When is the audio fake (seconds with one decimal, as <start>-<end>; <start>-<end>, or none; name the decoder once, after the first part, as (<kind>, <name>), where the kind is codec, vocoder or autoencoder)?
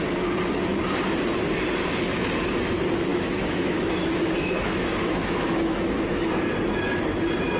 3.1-6.2 (autoencoder, DAC-VAE)